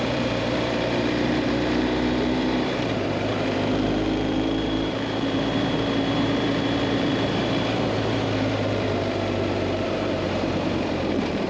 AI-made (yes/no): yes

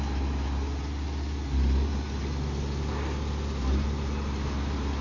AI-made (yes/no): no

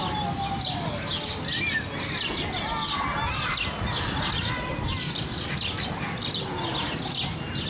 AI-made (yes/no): no